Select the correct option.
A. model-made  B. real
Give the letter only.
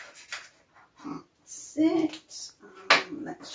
B